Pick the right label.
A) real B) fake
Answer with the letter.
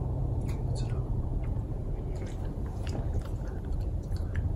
B